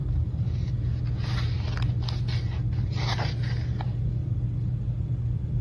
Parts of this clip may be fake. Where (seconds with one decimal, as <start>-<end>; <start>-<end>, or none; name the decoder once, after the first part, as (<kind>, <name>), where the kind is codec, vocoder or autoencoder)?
none